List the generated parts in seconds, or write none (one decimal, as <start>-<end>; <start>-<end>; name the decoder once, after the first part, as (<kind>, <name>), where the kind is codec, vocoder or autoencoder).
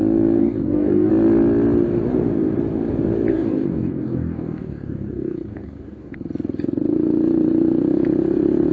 0.4-1.1 (codec, DAC); 3.3-6.1